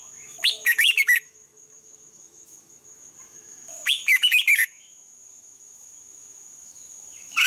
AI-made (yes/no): yes